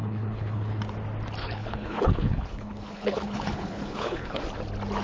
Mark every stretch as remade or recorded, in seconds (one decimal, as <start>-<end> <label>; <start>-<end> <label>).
0.0-0.8 remade; 0.8-1.4 recorded; 1.4-4.4 remade; 4.4-5.0 recorded